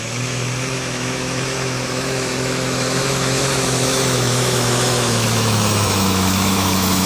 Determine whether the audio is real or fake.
fake